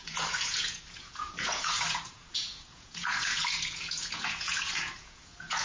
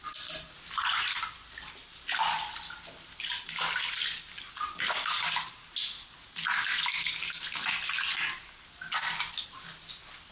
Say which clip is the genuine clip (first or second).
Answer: second